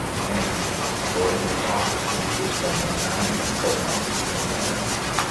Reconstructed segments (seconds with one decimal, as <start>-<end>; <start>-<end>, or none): none